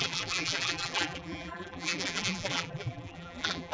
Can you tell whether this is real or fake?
fake